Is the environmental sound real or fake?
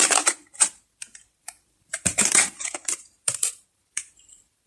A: fake